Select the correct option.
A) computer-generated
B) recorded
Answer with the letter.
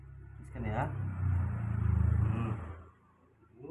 B